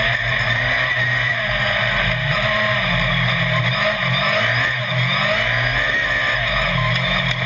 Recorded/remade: recorded